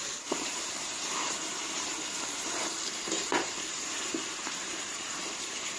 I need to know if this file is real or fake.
fake